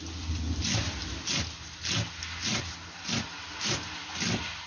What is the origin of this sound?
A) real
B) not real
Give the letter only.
A